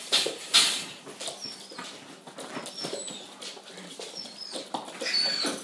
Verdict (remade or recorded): recorded